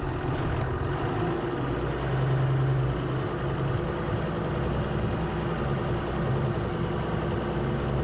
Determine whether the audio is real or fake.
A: real